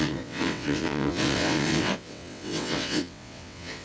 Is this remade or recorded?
remade